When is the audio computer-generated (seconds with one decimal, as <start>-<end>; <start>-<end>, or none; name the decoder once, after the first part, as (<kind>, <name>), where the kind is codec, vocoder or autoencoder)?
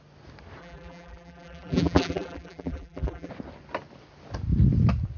0.6-3.3 (vocoder, BigVGAN v2)